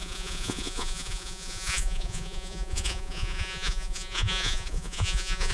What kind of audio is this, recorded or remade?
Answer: remade